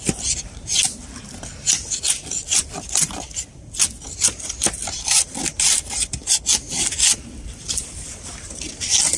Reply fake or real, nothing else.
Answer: real